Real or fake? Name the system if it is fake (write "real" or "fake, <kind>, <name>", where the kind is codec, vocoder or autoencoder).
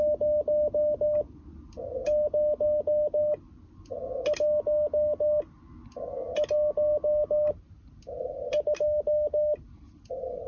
real